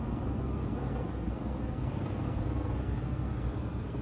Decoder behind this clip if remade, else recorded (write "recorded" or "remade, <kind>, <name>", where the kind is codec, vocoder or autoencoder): remade, codec, SNAC